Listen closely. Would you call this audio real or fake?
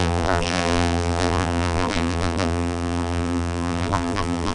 fake